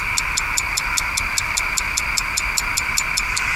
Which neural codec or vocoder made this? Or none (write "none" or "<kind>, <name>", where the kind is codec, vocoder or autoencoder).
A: none